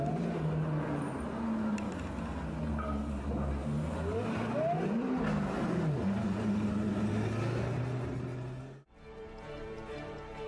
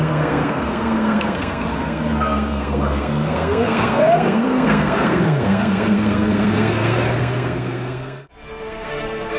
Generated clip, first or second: second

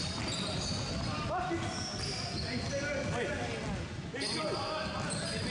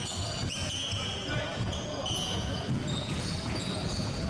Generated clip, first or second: second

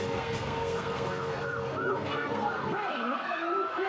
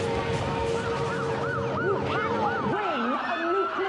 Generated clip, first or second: first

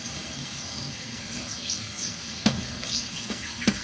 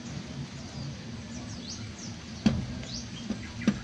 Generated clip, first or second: first